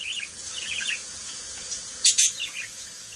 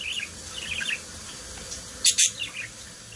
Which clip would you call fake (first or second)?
first